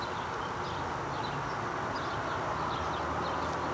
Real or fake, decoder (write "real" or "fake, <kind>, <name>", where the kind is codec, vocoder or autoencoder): real